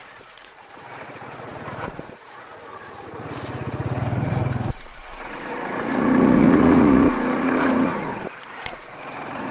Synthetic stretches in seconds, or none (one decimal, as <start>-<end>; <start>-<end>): 0.0-9.5